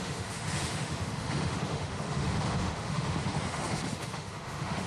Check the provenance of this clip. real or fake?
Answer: fake